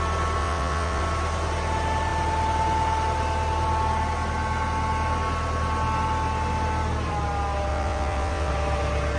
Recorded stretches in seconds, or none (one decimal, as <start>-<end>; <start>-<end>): 0.0-0.4; 1.0-7.7; 8.5-9.2